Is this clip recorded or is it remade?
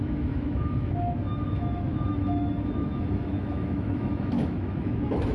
remade